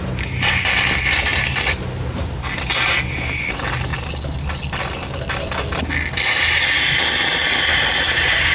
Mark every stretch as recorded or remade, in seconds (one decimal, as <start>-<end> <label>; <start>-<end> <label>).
0.0-8.5 recorded